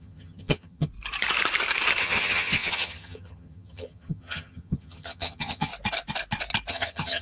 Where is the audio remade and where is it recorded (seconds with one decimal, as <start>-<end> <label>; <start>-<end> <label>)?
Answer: 0.0-0.9 remade; 0.9-2.0 recorded; 2.0-5.7 remade; 5.7-6.7 recorded; 6.7-7.2 remade